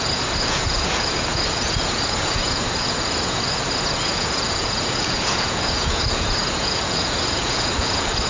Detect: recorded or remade remade